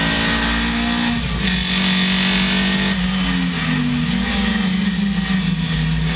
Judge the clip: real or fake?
real